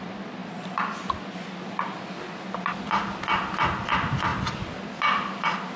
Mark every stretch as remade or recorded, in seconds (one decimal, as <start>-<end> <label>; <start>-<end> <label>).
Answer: 0.0-5.8 recorded